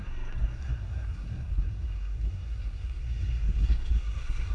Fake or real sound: fake